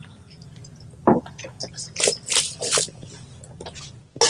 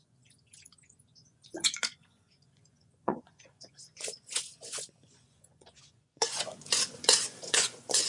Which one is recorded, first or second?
first